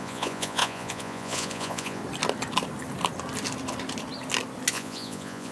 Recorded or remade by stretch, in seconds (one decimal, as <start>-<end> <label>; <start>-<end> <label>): 0.0-2.0 remade; 2.0-4.7 recorded; 4.7-5.5 remade